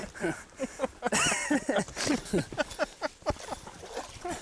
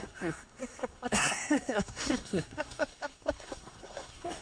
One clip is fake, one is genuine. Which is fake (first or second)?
second